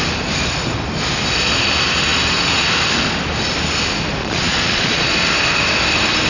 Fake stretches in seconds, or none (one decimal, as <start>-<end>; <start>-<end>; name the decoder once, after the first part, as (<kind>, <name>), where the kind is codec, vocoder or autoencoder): 4.2-5.1 (vocoder, Vocos)